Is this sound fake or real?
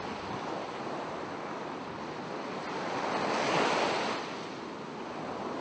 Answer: real